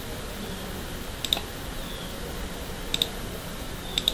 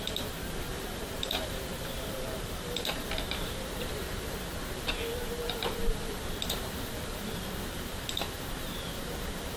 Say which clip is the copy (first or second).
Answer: second